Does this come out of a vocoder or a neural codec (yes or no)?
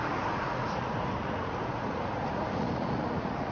yes